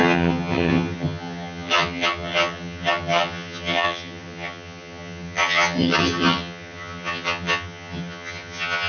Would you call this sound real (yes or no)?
no